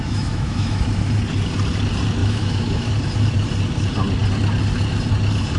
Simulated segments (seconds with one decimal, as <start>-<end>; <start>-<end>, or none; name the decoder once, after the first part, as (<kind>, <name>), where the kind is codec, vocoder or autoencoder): 0.0-0.8 (autoencoder, DAC-VAE); 2.2-2.9